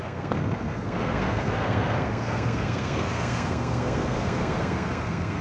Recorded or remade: remade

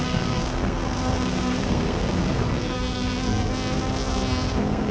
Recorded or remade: remade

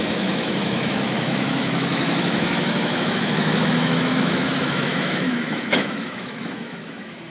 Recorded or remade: remade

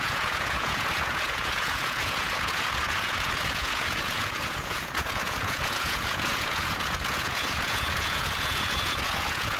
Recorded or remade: remade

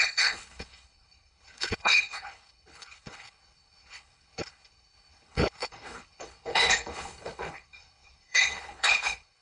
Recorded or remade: remade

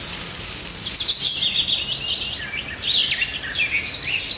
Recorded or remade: recorded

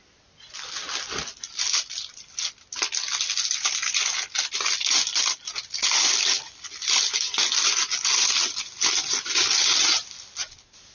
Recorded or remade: recorded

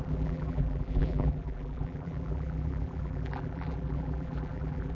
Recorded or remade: remade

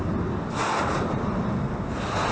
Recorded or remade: recorded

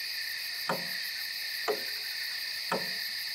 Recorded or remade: recorded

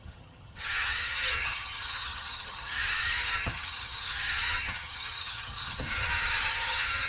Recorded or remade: remade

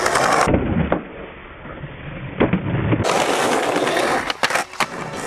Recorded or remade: recorded